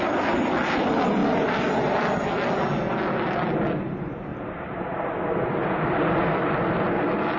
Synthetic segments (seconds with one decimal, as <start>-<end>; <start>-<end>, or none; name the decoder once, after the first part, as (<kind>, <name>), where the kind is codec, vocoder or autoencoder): none